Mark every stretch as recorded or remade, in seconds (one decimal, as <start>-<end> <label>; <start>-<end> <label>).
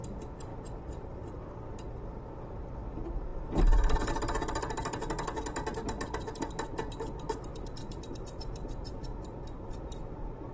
0.0-0.5 recorded; 0.5-1.4 remade; 1.4-3.3 recorded; 3.3-4.1 remade; 4.1-7.8 recorded; 7.8-9.8 remade; 9.8-10.5 recorded